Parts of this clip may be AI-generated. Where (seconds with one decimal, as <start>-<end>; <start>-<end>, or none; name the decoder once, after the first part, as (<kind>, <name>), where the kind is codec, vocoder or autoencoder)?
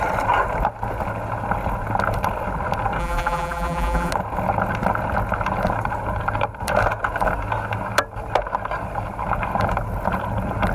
3.0-4.1 (vocoder, BigVGAN v2)